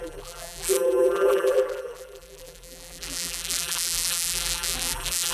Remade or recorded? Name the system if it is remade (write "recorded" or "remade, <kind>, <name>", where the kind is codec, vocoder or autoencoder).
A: remade, vocoder, BigVGAN v2